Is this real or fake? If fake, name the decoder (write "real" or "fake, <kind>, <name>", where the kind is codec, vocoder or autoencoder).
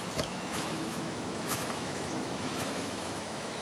fake, autoencoder, DAC-VAE